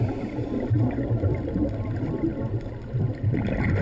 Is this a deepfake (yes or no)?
yes